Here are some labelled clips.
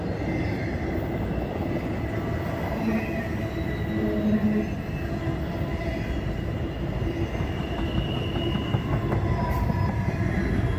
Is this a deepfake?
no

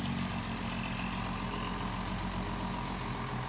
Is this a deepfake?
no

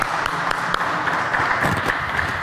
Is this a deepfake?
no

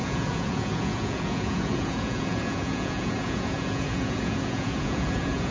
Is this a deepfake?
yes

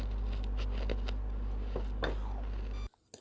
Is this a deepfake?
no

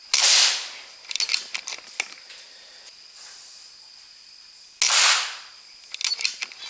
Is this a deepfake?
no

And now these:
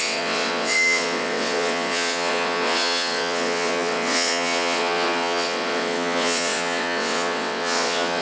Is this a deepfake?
yes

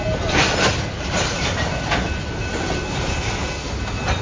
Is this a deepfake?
no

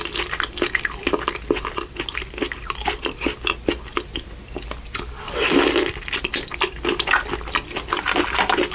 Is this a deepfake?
no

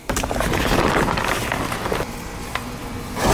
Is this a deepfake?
yes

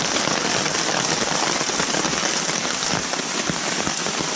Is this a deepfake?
no